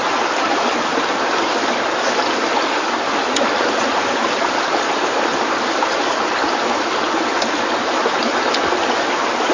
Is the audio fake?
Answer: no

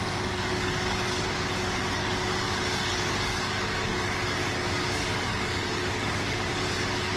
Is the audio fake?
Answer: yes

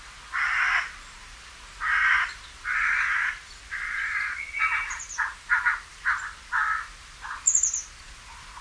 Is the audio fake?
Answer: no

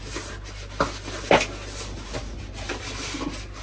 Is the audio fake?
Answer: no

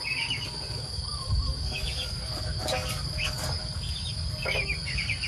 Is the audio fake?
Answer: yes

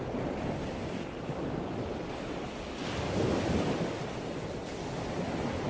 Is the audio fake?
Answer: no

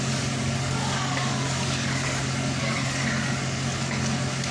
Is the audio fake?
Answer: yes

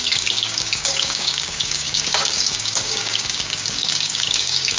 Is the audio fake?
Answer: yes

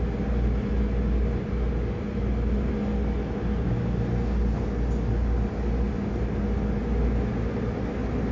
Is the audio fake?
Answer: no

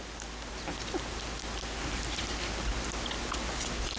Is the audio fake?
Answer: no